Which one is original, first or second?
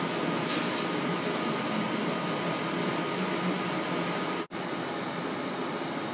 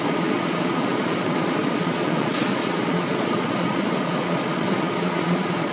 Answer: first